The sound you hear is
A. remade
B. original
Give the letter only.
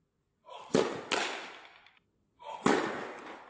B